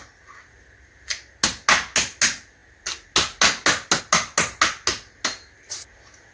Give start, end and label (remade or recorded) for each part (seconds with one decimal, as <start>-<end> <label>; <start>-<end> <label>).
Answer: 0.0-6.3 recorded